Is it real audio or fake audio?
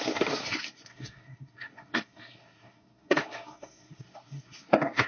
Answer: fake